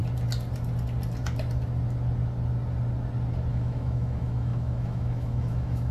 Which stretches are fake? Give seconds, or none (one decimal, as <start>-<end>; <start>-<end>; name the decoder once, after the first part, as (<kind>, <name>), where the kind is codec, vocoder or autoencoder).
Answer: 3.5-5.9 (autoencoder, DAC-VAE)